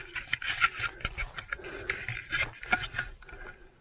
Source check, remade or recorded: recorded